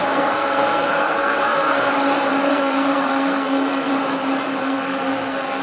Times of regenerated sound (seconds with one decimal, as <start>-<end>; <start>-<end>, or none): 0.0-1.9; 2.5-3.9; 4.6-5.6